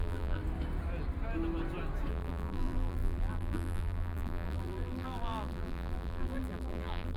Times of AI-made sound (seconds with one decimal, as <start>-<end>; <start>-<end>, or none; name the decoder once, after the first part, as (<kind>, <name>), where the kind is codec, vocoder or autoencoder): 0.0-0.4 (vocoder, BigVGAN v2); 2.1-7.2

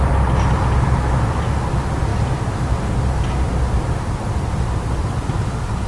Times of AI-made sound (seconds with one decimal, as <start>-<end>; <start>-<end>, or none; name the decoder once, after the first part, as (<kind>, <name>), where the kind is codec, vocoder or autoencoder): none

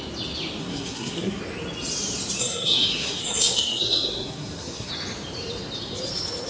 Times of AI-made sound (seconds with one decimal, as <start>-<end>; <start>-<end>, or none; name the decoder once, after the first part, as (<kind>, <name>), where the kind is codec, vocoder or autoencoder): 0.6-1.4 (codec, SNAC); 2.4-4.9